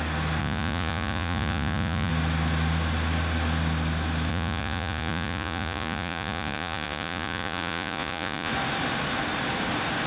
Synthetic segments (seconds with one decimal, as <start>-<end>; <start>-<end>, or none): 0.4-2.1; 4.3-8.5